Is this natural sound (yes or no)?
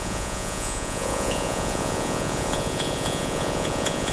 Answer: no